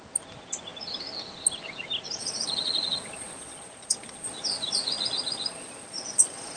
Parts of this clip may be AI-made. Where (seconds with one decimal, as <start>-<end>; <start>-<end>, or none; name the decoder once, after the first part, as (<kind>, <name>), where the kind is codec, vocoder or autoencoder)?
2.2-6.6 (vocoder, Vocos)